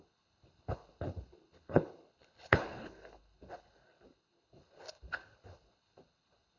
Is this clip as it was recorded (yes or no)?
no